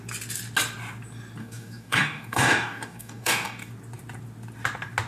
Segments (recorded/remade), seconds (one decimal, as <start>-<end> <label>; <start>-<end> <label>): 0.0-1.4 recorded; 1.4-3.7 remade; 3.7-5.1 recorded